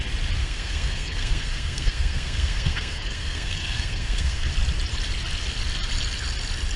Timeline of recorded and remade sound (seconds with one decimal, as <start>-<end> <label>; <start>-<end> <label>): 0.0-0.4 recorded; 0.4-4.5 remade; 4.5-6.8 recorded